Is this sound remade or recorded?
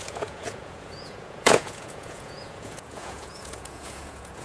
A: remade